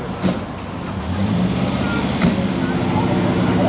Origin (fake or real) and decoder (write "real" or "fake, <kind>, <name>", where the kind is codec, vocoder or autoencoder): real